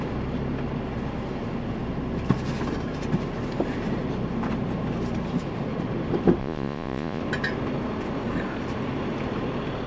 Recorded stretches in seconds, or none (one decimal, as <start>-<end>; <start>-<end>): 0.0-6.4; 7.2-9.9